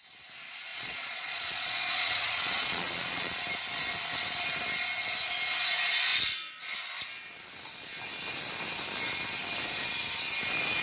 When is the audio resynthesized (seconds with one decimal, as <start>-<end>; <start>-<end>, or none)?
0.7-3.4